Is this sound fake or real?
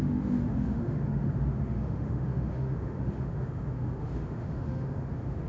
fake